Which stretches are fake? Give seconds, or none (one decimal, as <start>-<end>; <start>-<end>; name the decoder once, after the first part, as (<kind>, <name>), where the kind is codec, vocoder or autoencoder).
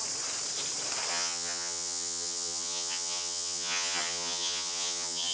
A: 1.1-5.3 (vocoder, HiFi-GAN)